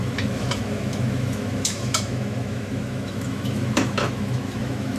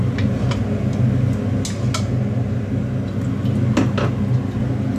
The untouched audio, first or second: second